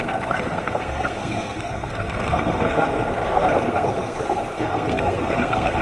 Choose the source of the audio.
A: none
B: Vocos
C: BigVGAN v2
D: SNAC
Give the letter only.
D